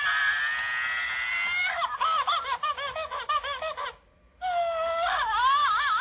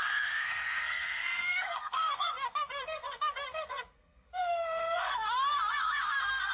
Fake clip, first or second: second